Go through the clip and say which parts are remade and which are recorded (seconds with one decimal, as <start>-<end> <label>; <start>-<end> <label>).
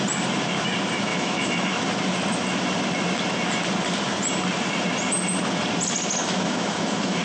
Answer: 0.0-1.1 recorded; 1.1-1.8 remade; 1.8-6.2 recorded; 6.2-7.2 remade